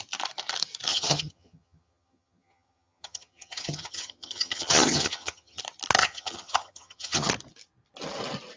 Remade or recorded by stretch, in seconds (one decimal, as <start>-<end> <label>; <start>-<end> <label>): 0.0-0.9 recorded; 0.9-5.6 remade; 5.6-6.0 recorded; 6.0-7.3 remade; 7.3-8.6 recorded